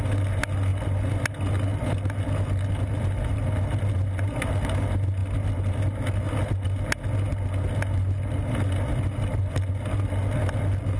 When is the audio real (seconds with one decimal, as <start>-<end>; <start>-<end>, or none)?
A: 0.0-11.0